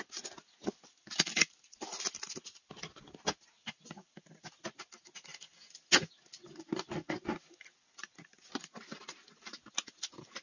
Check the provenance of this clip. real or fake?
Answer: real